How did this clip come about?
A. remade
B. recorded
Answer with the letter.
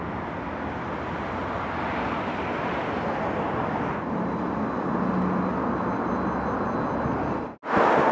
B